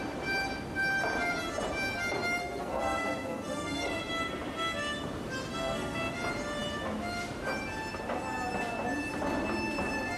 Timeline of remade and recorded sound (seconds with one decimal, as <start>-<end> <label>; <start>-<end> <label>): 0.0-2.4 recorded; 2.4-4.0 remade; 4.0-5.5 recorded; 5.5-6.1 remade; 6.1-10.2 recorded